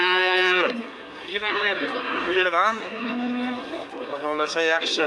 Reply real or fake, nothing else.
fake